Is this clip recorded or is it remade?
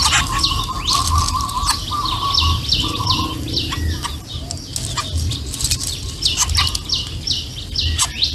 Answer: recorded